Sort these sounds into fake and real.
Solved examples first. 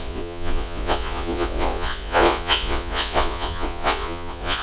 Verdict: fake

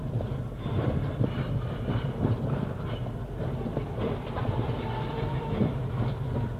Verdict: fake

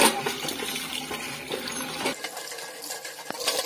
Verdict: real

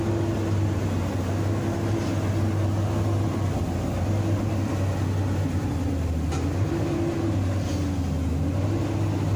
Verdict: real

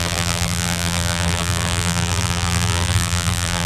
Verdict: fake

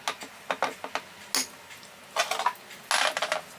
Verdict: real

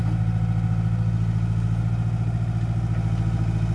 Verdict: real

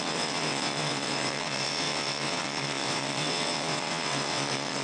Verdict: fake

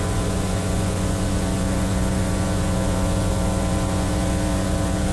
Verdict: fake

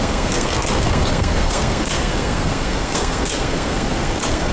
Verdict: fake